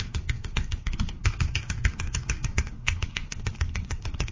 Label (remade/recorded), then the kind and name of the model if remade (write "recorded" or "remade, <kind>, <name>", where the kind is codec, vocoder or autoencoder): remade, codec, SNAC